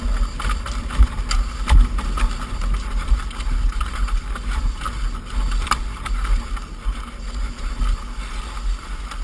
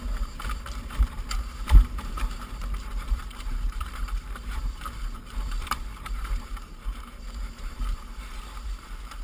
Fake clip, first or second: second